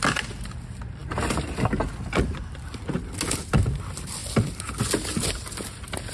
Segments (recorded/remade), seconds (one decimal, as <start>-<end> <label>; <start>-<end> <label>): 0.0-6.1 recorded